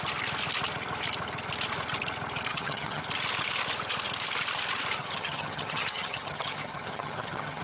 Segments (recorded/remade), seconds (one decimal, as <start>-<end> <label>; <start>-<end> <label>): 0.0-2.5 recorded; 2.5-3.0 remade; 3.0-5.0 recorded; 5.0-7.6 remade